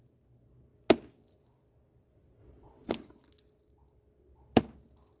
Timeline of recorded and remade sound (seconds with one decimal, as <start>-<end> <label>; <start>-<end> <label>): 0.0-2.4 recorded; 2.4-2.9 remade; 2.9-5.2 recorded